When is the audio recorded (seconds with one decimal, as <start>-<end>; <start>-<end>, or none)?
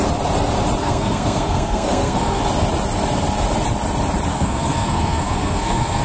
0.0-0.8; 2.4-4.3